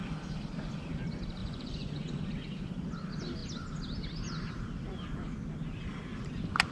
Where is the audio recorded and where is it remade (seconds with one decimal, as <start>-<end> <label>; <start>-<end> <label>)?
0.0-1.4 recorded; 1.4-2.2 remade; 2.2-6.7 recorded